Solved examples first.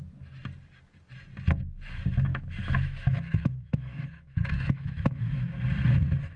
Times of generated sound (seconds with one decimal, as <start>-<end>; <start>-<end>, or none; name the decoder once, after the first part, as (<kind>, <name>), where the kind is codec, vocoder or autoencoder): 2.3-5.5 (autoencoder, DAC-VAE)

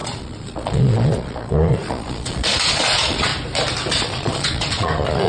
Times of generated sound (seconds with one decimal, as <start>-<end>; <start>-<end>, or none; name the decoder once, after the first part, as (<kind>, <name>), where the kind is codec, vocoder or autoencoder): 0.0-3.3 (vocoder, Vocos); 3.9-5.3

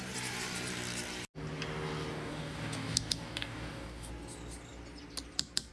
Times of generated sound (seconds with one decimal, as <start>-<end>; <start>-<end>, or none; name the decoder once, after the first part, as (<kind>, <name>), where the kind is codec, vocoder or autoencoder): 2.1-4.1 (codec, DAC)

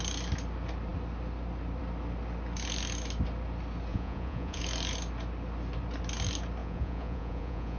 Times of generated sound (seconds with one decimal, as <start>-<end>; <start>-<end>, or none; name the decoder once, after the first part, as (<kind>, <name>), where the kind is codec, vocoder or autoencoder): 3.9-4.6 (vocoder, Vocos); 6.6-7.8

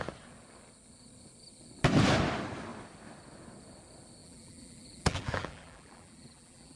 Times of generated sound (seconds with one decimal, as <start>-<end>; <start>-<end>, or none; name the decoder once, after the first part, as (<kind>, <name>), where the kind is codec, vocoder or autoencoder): 4.2-6.8 (vocoder, BigVGAN v2)